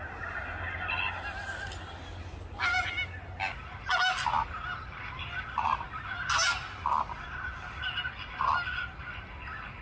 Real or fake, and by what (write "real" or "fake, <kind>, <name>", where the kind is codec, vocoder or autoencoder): real